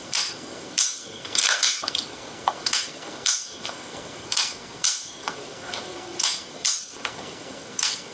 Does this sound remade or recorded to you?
remade